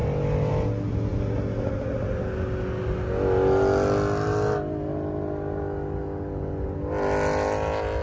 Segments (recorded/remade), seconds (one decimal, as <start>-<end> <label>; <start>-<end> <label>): 0.0-8.0 recorded